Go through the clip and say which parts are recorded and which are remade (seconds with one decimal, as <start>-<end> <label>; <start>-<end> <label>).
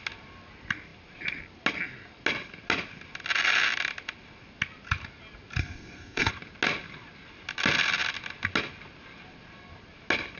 0.0-5.6 recorded; 5.6-6.3 remade; 6.3-10.4 recorded